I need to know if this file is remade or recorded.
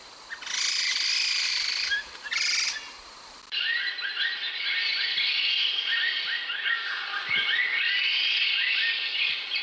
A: recorded